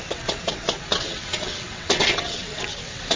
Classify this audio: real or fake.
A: fake